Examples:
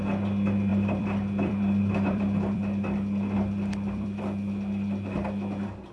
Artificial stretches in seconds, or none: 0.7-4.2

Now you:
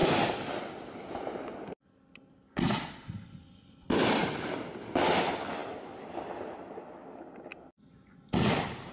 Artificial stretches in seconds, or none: 0.0-1.1

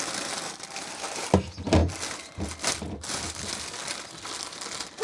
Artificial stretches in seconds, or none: none

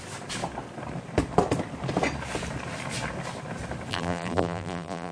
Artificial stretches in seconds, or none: 3.9-5.1

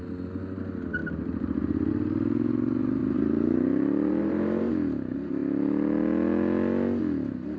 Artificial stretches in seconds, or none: 1.0-1.9; 3.0-4.7

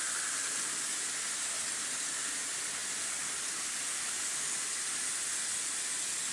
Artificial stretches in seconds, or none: none